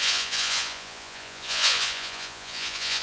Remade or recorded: remade